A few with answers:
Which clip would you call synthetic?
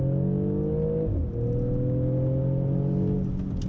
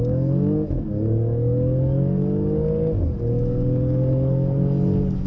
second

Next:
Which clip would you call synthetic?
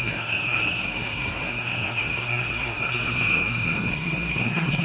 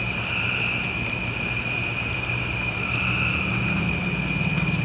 first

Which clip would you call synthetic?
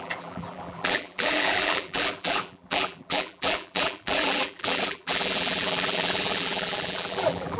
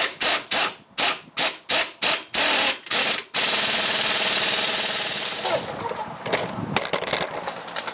first